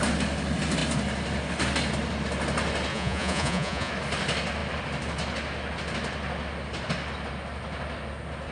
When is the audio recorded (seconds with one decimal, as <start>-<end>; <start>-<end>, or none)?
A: 0.0-2.9; 3.9-8.5